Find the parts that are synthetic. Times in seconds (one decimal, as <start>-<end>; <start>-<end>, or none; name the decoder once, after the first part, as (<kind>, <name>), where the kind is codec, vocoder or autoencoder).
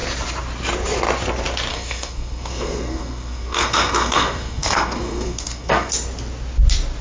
1.7-5.9 (codec, SNAC)